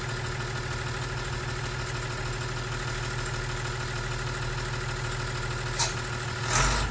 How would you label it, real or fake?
real